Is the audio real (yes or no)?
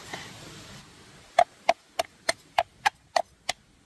yes